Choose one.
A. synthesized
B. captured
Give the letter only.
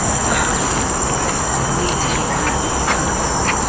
B